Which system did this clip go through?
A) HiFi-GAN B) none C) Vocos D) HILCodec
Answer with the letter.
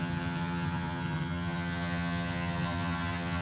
A